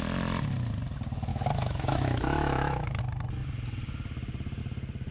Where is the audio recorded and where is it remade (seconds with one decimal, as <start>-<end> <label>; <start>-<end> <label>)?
0.0-1.3 recorded; 1.3-3.0 remade; 3.0-5.1 recorded